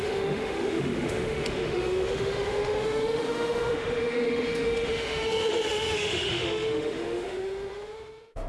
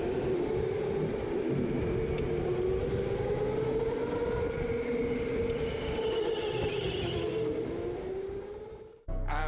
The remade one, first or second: first